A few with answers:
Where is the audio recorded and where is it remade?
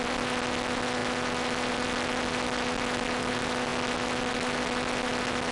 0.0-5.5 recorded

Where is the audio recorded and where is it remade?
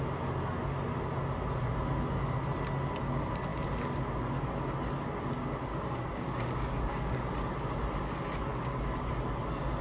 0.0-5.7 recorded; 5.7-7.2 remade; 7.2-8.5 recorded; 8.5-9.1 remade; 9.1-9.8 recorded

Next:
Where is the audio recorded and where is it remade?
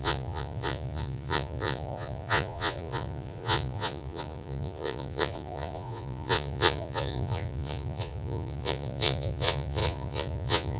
0.0-10.8 remade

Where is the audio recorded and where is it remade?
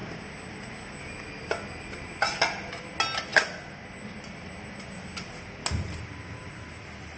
0.0-7.2 recorded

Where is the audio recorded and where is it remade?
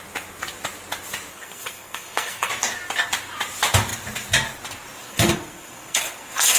0.0-1.3 recorded; 1.3-2.5 remade; 2.5-5.0 recorded; 5.0-6.6 remade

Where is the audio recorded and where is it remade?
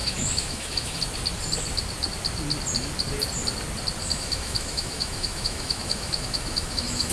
0.0-1.0 remade; 1.0-4.0 recorded; 4.0-7.1 remade